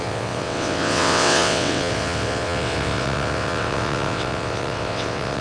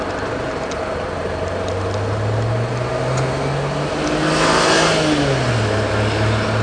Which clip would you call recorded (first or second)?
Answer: second